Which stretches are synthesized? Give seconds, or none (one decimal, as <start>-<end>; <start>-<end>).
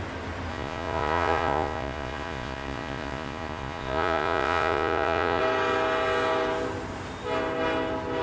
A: 0.5-5.4